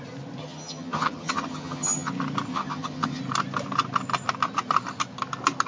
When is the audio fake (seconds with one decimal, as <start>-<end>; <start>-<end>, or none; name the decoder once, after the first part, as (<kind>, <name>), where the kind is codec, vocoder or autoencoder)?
0.4-2.1 (vocoder, HiFi-GAN); 2.5-3.2